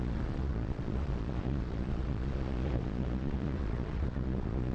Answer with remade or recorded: remade